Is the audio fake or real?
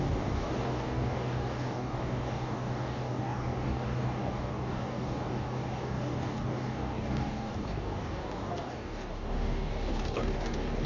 fake